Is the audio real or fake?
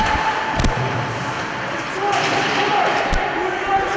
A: real